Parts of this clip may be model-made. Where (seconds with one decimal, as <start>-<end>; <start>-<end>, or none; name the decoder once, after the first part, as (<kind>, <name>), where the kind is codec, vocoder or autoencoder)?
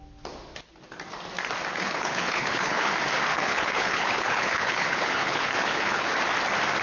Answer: 1.7-2.9 (codec, HILCodec); 3.3-6.1